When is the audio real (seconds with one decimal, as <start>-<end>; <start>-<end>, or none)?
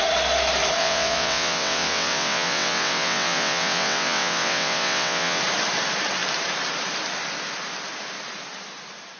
0.0-0.8; 5.4-9.2